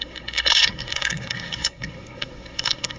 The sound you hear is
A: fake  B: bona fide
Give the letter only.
A